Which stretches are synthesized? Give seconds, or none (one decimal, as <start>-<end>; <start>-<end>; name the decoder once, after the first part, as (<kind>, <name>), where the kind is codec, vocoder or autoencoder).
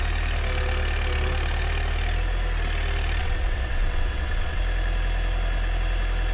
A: 3.2-4.6 (vocoder, WaveNeXt)